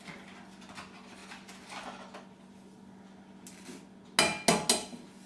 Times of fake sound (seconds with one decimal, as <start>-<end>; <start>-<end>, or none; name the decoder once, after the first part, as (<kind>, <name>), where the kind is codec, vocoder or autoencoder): none